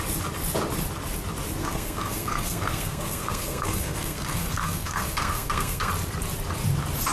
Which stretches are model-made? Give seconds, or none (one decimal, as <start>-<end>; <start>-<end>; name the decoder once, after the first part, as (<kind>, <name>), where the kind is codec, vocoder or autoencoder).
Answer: 1.6-5.9 (codec, SNAC)